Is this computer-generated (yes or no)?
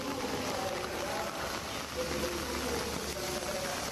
no